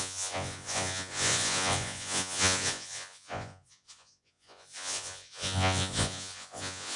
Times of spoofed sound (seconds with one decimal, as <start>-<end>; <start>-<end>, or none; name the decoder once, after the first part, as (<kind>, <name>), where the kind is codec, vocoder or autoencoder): 0.0-7.0 (vocoder, Vocos)